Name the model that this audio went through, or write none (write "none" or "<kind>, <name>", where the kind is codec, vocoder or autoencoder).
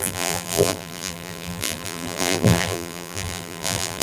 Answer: vocoder, BigVGAN v2